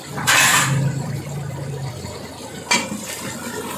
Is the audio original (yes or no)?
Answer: yes